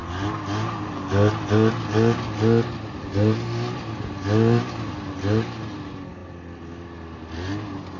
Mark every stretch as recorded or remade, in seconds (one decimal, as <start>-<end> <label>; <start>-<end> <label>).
0.0-8.0 recorded